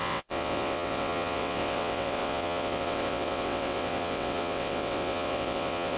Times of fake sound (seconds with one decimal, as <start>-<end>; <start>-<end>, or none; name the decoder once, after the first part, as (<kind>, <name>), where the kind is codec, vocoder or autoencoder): 0.0-6.0 (vocoder, WaveNeXt)